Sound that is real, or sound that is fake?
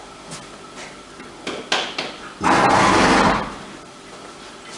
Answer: real